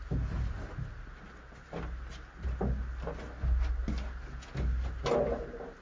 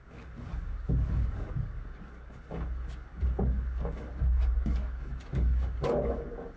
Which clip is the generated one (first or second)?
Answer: second